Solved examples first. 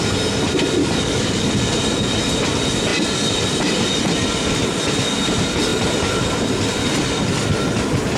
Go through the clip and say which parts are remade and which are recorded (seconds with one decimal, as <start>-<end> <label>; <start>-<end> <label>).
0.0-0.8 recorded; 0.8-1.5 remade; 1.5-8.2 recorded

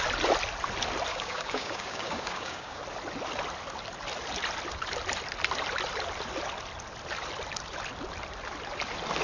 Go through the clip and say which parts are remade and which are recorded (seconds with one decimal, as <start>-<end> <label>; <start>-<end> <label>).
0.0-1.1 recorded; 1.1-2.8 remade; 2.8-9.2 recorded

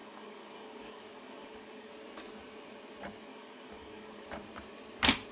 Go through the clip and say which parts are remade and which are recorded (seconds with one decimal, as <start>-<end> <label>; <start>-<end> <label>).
0.0-1.9 remade; 1.9-3.3 recorded; 3.3-4.2 remade; 4.2-5.3 recorded

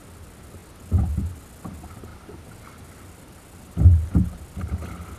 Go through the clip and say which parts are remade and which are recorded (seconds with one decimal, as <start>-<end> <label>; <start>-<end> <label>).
0.0-5.2 recorded

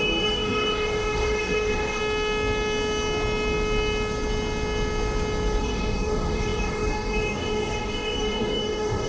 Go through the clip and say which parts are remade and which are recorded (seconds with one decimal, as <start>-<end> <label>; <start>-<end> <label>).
0.0-2.0 remade; 2.0-5.6 recorded; 5.6-9.1 remade

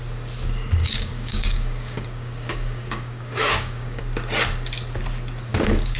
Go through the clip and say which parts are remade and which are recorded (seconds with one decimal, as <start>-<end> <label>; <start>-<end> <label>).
0.0-0.8 recorded; 0.8-4.0 remade; 4.0-5.5 recorded; 5.5-6.0 remade